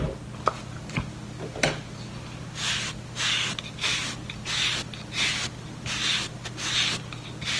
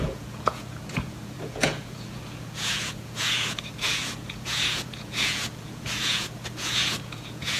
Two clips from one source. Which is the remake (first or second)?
second